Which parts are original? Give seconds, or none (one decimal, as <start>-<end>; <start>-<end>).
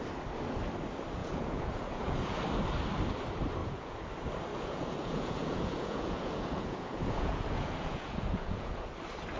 0.0-1.2; 2.4-3.6; 4.1-4.5; 8.9-9.4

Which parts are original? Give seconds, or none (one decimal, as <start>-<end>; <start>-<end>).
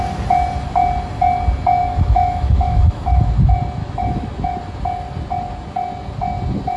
0.0-1.8; 3.3-3.8; 4.6-6.8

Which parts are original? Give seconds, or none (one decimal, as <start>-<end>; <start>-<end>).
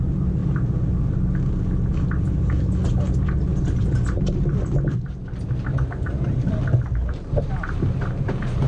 0.0-8.7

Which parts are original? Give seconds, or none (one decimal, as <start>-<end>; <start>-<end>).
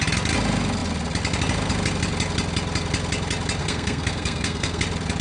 0.0-3.6; 4.8-5.2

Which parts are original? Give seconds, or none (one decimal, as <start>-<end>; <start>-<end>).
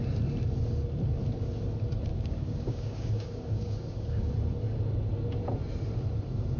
0.0-2.1; 4.3-6.6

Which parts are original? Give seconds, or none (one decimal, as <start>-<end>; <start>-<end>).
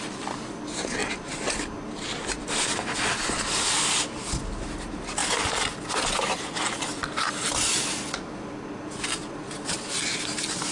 0.0-1.0; 3.8-10.7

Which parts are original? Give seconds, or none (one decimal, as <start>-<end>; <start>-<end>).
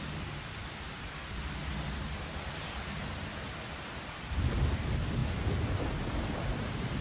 0.0-7.0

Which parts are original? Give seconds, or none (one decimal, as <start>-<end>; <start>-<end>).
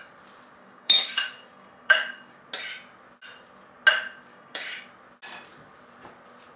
0.0-0.6; 2.4-4.3; 4.9-6.6